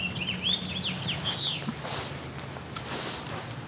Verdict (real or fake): real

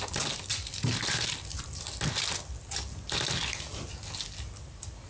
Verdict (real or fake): real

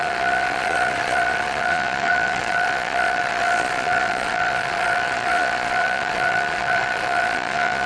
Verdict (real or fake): fake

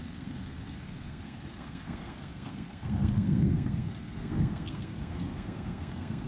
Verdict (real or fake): fake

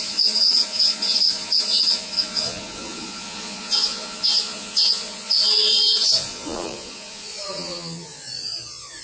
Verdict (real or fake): fake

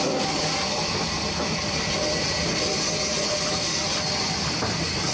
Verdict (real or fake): real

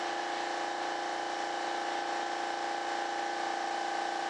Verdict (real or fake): real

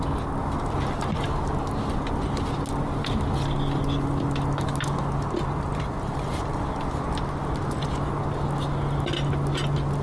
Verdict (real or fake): real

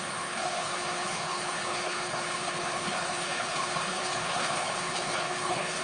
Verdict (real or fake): fake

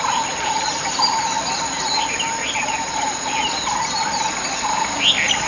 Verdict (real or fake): real